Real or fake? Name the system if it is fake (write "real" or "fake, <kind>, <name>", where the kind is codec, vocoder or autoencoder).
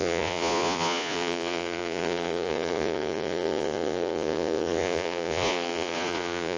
fake, vocoder, Vocos